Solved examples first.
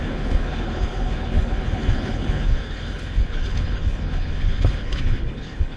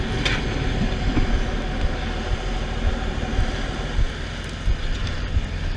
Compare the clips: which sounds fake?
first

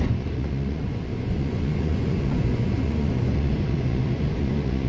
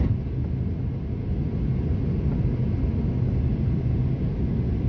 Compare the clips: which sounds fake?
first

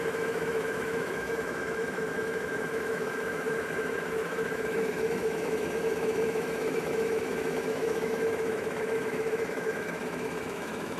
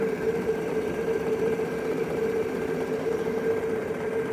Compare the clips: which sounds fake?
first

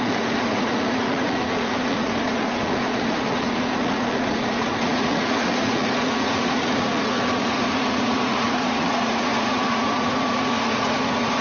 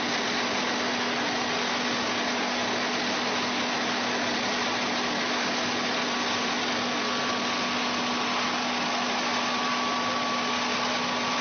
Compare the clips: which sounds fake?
first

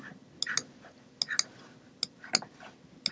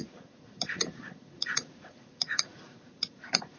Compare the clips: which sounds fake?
second